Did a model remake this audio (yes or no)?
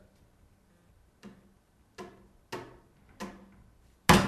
no